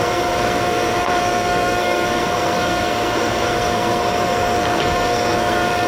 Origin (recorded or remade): remade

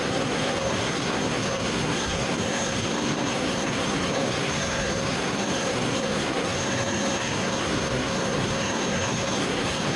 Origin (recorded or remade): remade